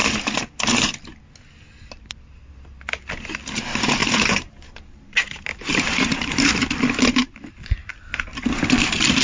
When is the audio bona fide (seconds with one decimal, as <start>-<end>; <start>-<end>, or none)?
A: 0.0-4.0; 6.5-7.2; 7.9-9.2